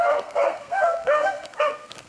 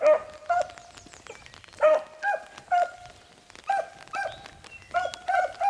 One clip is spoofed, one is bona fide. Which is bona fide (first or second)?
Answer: second